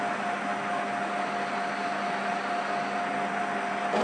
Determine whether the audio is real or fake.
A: real